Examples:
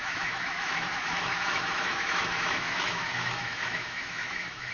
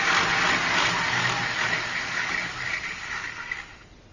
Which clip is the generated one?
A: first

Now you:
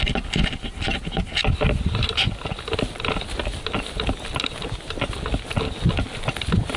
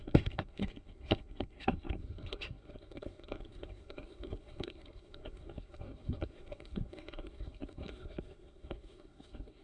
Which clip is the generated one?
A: second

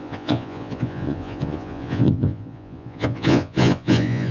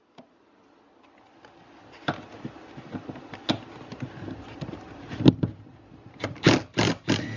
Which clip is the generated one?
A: first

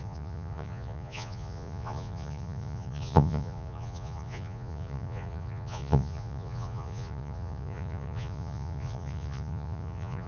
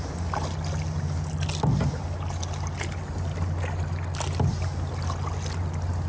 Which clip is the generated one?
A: first